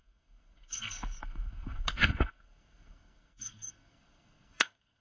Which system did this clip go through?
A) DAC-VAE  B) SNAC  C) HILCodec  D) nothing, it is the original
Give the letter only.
B